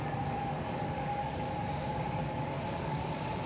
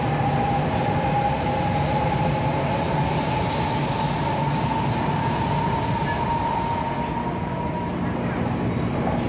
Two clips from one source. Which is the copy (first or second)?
first